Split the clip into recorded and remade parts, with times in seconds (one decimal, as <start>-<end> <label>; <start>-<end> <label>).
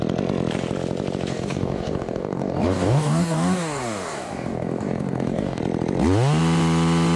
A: 0.0-1.3 recorded; 1.3-5.6 remade; 5.6-7.2 recorded